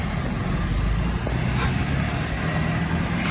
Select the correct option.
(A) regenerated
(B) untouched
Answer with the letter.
B